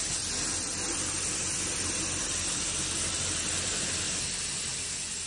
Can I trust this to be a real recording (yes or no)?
yes